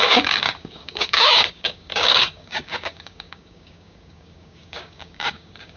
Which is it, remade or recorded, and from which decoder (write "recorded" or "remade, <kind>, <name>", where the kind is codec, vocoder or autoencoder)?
remade, codec, DAC